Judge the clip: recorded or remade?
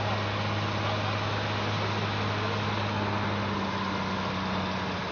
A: recorded